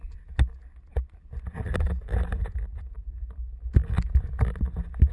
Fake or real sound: real